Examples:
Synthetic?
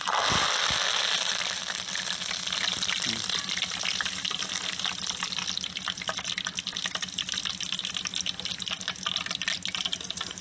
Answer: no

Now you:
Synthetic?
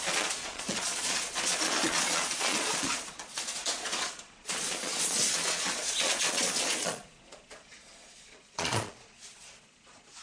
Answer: yes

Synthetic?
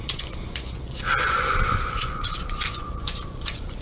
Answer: yes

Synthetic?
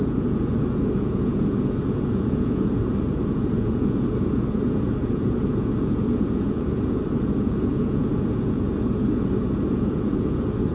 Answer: yes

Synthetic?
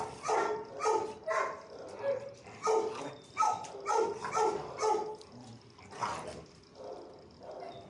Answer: no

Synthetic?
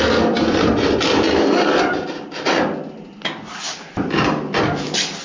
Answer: no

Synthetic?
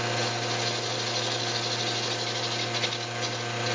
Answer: no